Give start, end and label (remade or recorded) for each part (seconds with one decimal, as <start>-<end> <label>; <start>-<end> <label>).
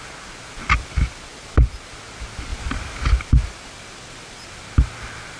0.0-5.4 recorded